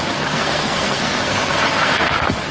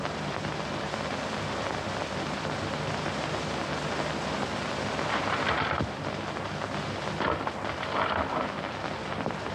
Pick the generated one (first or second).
first